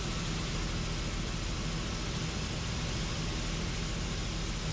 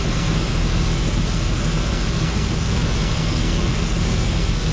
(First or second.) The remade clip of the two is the second